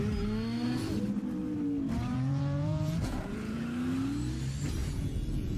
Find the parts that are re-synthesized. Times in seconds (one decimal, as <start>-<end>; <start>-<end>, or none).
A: 2.1-3.6; 4.8-5.6